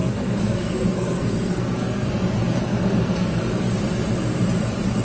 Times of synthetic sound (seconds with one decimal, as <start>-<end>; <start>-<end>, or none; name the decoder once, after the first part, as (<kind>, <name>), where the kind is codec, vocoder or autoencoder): 0.0-2.1 (codec, SNAC); 2.6-3.8